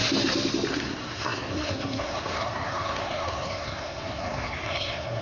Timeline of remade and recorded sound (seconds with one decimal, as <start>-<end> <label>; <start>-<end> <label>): 0.0-0.7 recorded; 0.7-5.2 remade